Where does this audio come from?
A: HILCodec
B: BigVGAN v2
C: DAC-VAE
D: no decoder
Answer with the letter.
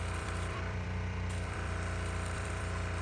B